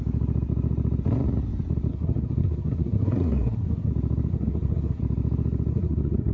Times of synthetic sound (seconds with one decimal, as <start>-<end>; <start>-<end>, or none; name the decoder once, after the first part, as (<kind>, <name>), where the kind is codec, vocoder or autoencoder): 1.9-3.9 (codec, SNAC); 4.3-5.0; 5.7-6.3